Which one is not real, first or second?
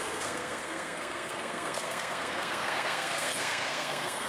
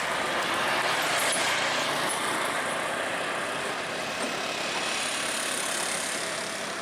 first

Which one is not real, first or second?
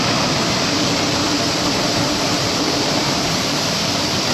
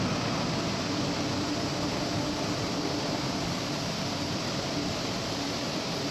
first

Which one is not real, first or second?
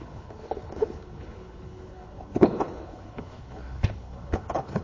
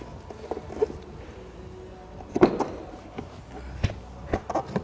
first